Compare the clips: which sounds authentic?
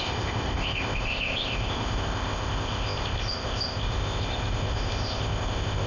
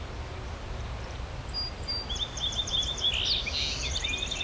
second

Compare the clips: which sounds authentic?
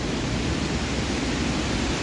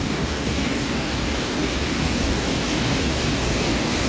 first